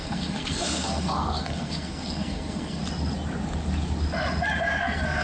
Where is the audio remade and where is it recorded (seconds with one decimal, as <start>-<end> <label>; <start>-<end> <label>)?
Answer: 0.0-2.8 remade; 2.8-4.8 recorded; 4.8-5.2 remade